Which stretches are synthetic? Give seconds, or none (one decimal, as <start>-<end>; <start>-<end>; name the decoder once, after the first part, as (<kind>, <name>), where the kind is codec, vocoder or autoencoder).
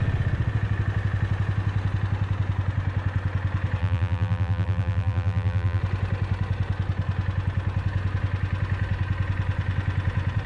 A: 3.8-5.8 (vocoder, BigVGAN v2)